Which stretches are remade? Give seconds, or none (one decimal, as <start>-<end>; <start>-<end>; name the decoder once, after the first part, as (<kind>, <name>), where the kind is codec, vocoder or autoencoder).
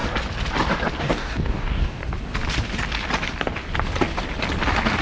1.0-2.0 (codec, DAC)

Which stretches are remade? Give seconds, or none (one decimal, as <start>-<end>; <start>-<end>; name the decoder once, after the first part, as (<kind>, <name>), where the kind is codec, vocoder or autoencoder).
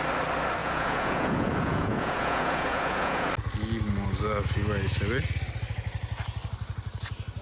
0.6-3.3 (vocoder, Vocos)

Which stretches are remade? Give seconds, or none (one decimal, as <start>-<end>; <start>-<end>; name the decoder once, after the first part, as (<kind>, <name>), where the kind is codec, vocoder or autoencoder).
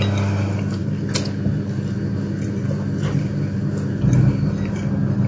none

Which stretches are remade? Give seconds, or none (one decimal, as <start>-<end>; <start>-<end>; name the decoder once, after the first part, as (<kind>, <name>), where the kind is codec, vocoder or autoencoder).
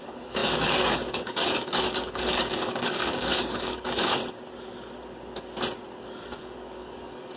0.0-4.2 (codec, DAC); 6.0-7.4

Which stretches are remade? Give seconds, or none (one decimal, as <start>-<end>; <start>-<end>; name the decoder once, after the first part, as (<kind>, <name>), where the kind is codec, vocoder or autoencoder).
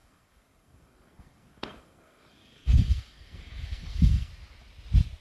0.0-4.3 (codec, SNAC)